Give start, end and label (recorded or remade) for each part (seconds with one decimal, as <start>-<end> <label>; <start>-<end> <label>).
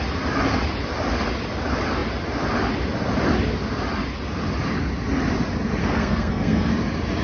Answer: 0.0-5.8 recorded; 5.8-6.7 remade; 6.7-7.2 recorded